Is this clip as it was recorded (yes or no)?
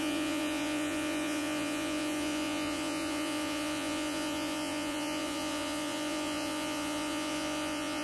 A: no